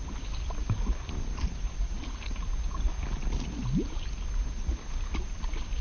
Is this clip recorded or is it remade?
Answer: recorded